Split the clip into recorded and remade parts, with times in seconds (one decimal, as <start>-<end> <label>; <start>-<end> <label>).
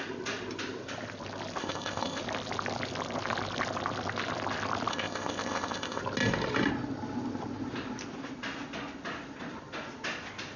0.0-1.6 recorded; 1.6-2.2 remade; 2.2-4.9 recorded; 4.9-6.0 remade; 6.0-10.6 recorded